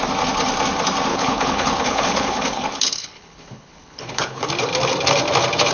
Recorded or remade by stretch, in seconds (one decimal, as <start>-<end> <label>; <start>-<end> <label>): 0.0-1.1 recorded; 1.1-4.5 remade; 4.5-5.7 recorded

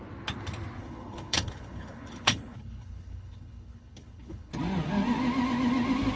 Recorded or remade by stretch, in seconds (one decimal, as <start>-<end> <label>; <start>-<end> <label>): 0.0-0.8 recorded; 0.8-4.5 remade; 4.5-6.2 recorded